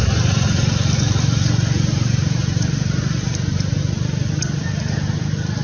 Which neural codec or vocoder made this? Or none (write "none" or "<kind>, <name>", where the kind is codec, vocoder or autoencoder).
none